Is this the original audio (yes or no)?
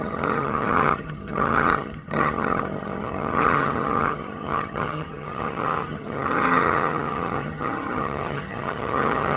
no